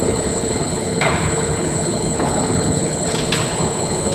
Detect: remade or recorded remade